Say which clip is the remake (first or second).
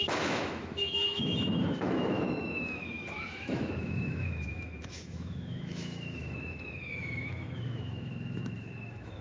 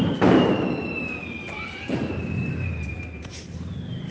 first